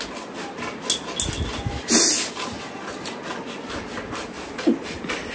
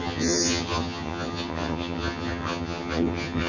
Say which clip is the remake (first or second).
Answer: second